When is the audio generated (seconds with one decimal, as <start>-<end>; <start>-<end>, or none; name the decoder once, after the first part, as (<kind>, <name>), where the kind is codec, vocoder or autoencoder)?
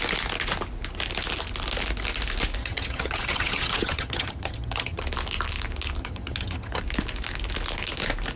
2.6-5.0 (vocoder, HiFi-GAN); 6.0-6.8